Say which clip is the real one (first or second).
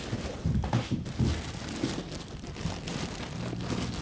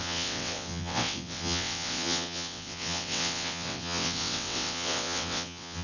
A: first